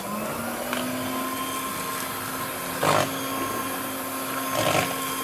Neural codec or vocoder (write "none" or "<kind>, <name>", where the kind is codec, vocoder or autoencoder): none